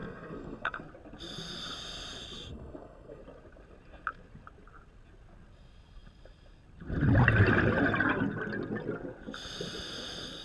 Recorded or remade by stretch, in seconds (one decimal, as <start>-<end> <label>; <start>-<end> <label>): 0.0-0.8 remade; 0.8-2.5 recorded; 2.5-3.2 remade; 3.2-10.4 recorded